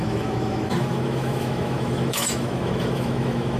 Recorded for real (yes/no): no